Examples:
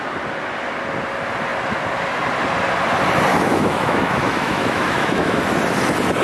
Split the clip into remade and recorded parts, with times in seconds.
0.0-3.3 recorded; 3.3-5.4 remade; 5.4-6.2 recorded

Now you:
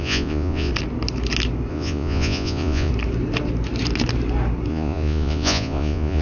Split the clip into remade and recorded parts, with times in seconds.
0.0-0.7 remade; 0.7-1.7 recorded; 1.7-2.9 remade; 2.9-4.7 recorded; 4.7-6.2 remade